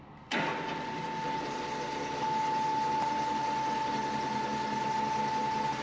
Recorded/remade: recorded